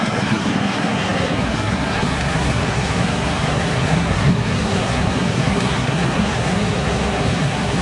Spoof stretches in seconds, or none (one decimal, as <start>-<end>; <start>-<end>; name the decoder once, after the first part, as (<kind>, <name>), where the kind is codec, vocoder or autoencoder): 0.0-7.8 (codec, SNAC)